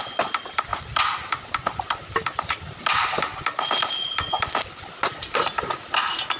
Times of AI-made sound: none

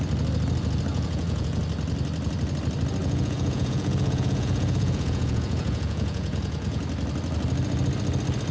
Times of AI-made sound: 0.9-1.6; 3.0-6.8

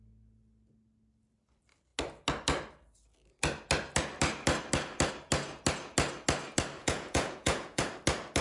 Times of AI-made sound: 6.8-7.8

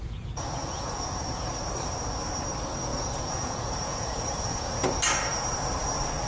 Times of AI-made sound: 0.0-1.6; 2.9-4.7

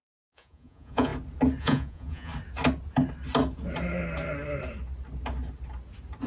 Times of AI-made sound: 0.0-1.1; 1.6-2.3

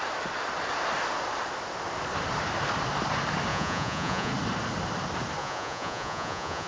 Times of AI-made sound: 3.5-4.3; 5.4-6.7

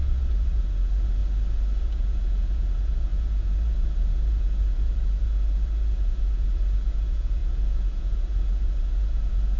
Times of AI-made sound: 0.0-1.2; 1.8-9.6